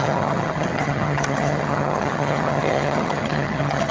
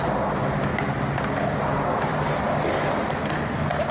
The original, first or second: second